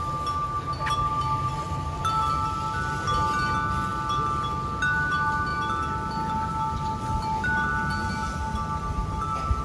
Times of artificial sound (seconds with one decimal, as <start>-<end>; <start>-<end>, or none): none